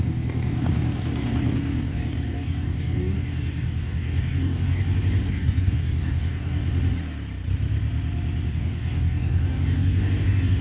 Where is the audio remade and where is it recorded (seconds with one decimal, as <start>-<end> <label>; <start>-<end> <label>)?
0.0-4.8 remade; 4.8-5.3 recorded; 5.3-6.6 remade; 6.6-8.5 recorded; 8.5-10.6 remade